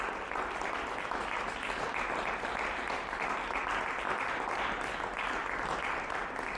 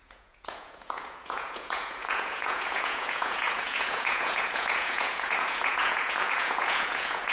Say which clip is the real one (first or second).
first